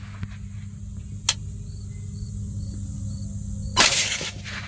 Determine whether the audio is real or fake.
real